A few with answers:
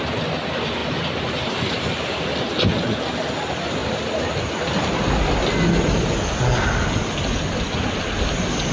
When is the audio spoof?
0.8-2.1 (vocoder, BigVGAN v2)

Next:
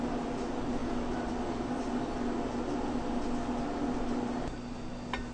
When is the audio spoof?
none

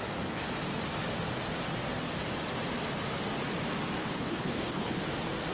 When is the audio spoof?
4.0-5.0 (codec, HILCodec)

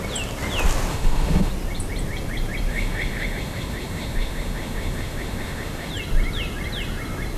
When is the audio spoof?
0.9-1.5 (autoencoder, DAC-VAE); 2.7-5.9

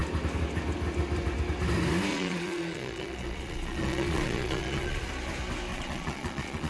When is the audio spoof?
2.1-5.1 (vocoder, Vocos); 5.7-6.7

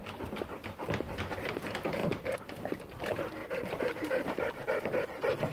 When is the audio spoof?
0.0-1.5 (vocoder, BigVGAN v2); 2.0-2.8; 3.4-4.8

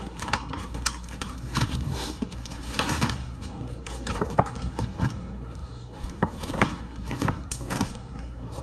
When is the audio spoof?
0.0-8.6 (codec, SNAC)